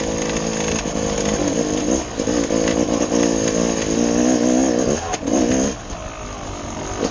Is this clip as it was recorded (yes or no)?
yes